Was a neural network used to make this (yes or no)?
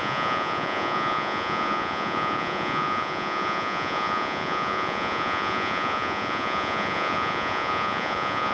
yes